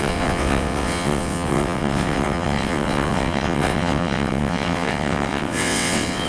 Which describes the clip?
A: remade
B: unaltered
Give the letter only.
A